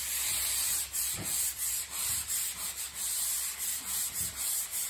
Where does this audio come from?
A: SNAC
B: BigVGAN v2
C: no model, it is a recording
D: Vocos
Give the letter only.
B